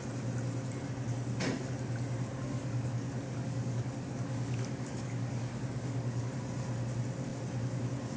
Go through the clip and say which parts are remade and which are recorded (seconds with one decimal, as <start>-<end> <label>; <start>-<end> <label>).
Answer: 0.0-2.3 recorded; 2.3-6.4 remade; 6.4-8.2 recorded